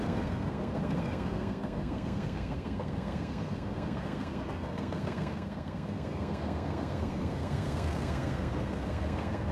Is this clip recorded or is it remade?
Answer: remade